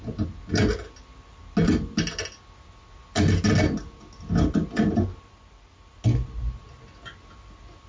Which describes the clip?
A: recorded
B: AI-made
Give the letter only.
A